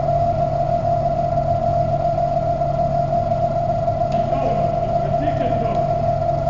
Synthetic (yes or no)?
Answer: no